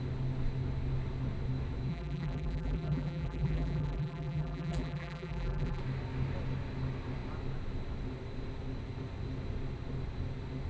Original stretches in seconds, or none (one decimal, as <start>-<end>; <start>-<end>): 0.0-1.9; 5.8-10.7